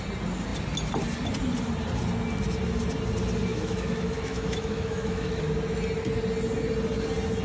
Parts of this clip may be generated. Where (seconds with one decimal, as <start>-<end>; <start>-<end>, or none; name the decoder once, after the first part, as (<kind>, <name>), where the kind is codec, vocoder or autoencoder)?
3.5-5.4 (autoencoder, DAC-VAE)